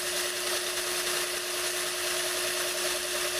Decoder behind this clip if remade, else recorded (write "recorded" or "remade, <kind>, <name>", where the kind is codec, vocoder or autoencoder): recorded